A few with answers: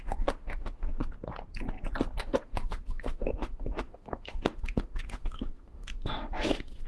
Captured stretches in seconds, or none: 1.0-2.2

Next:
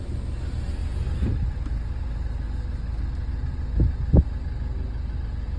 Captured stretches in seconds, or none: 0.0-5.6